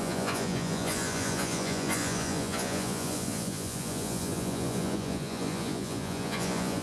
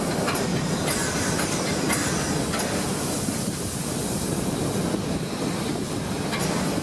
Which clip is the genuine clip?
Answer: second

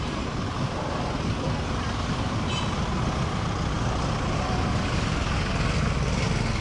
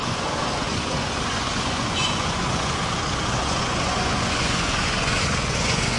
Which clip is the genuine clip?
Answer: first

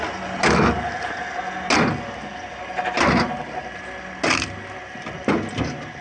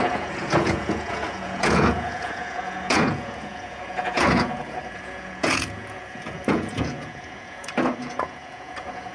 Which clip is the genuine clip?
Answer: first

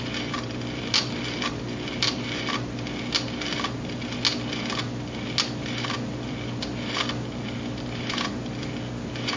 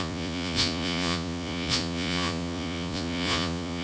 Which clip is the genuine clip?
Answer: first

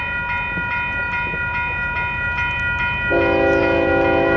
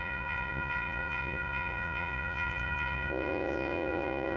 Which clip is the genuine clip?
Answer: first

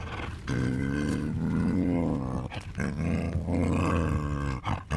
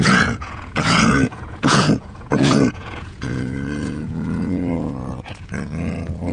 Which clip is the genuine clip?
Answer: first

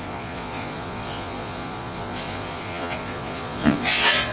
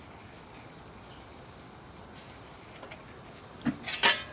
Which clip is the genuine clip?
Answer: second